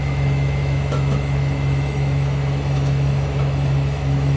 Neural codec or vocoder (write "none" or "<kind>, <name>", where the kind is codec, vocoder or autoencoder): autoencoder, DAC-VAE